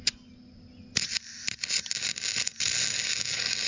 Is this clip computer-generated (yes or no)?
no